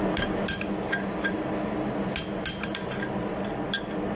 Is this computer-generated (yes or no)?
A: no